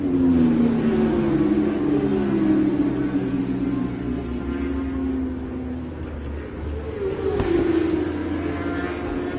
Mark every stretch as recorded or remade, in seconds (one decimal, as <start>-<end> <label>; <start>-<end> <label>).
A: 0.0-9.4 recorded